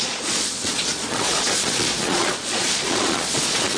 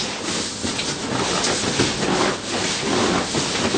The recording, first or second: second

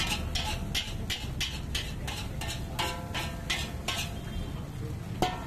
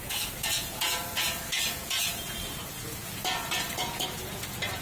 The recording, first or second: first